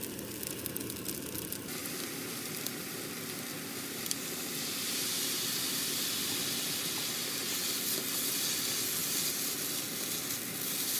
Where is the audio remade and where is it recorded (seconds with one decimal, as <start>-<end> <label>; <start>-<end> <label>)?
0.0-11.0 recorded